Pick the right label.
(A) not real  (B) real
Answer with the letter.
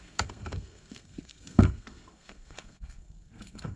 A